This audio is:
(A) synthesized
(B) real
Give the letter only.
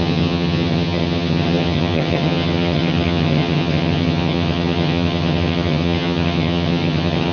A